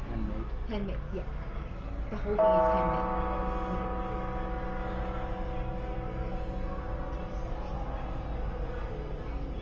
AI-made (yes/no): no